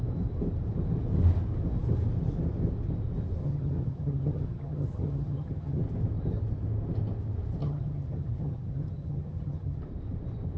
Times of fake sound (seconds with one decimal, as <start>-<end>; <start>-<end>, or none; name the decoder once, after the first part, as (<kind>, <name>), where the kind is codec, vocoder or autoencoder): 3.4-5.8 (vocoder, HiFi-GAN); 7.6-9.8